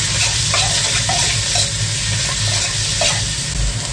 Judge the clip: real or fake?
real